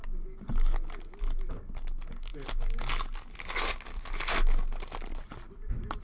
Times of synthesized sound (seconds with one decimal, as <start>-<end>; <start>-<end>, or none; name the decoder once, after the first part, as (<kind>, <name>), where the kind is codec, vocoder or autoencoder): none